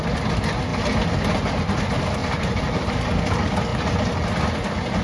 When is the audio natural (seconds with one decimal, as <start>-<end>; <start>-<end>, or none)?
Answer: 0.0-2.2; 3.2-5.0